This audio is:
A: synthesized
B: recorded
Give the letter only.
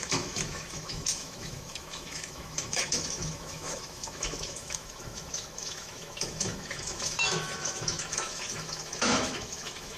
A